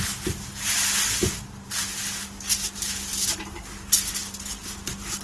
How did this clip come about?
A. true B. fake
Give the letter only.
A